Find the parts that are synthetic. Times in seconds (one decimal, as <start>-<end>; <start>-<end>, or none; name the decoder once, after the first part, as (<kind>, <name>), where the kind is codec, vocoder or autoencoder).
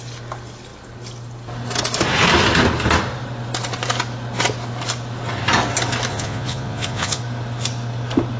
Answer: 6.1-7.2 (vocoder, Vocos)